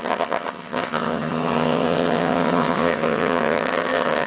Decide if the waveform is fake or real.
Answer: fake